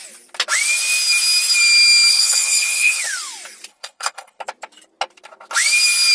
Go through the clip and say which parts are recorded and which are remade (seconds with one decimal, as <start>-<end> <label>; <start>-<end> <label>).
0.0-2.1 recorded; 2.1-3.0 remade; 3.0-3.7 recorded; 3.7-4.4 remade; 4.4-6.1 recorded

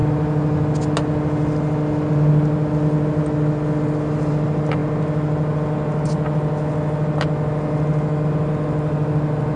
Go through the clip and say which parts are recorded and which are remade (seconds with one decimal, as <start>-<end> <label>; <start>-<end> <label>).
0.0-9.6 recorded

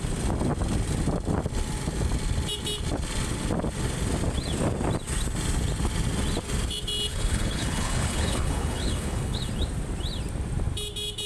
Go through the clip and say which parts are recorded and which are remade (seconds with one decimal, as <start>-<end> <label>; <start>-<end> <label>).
0.0-7.1 recorded; 7.1-9.5 remade; 9.5-11.3 recorded

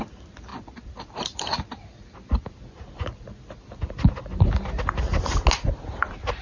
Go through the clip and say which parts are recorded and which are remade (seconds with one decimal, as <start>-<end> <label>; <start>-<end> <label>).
0.0-6.4 recorded

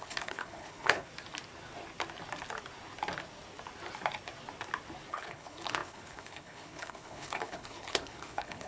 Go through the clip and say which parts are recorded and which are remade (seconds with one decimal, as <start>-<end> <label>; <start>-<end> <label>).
0.0-1.1 remade; 1.1-5.1 recorded; 5.1-8.7 remade

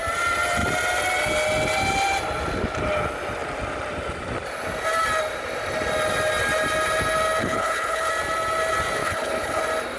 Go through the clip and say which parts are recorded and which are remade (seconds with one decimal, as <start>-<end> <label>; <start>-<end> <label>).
0.0-7.4 recorded; 7.4-8.1 remade; 8.1-9.0 recorded; 9.0-9.6 remade; 9.6-10.0 recorded

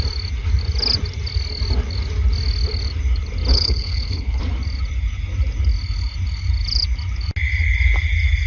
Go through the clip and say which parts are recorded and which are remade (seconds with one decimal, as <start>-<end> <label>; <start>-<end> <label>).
0.0-3.5 recorded; 3.5-4.4 remade; 4.4-8.5 recorded